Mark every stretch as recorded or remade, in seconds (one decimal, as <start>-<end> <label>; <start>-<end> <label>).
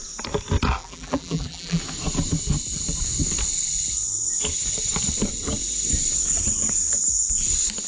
0.0-0.8 recorded; 0.8-1.8 remade; 1.8-7.9 recorded